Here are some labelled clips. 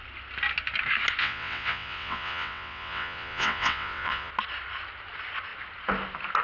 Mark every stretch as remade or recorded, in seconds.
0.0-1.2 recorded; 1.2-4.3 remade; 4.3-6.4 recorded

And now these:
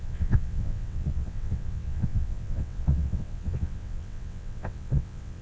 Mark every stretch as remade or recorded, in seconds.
0.0-5.4 remade

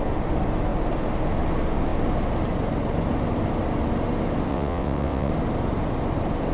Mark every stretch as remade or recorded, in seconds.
0.0-4.5 recorded; 4.5-5.3 remade; 5.3-6.5 recorded

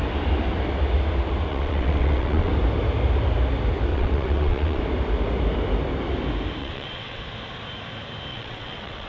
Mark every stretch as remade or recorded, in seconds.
0.0-1.5 recorded; 1.5-2.5 remade; 2.5-3.9 recorded; 3.9-4.8 remade; 4.8-6.6 recorded; 6.6-7.2 remade; 7.2-8.3 recorded; 8.3-9.1 remade

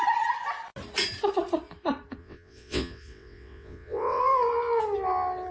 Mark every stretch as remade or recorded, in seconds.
0.0-2.2 recorded; 2.2-4.2 remade; 4.2-5.5 recorded

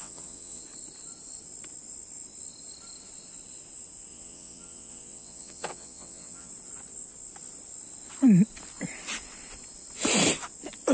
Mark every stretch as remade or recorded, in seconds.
0.0-0.6 remade; 0.6-4.1 recorded; 4.1-6.5 remade; 6.5-10.9 recorded